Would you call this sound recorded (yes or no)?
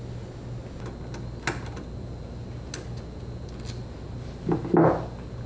yes